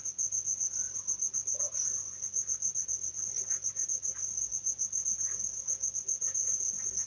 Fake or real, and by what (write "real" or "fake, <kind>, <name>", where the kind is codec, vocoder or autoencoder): real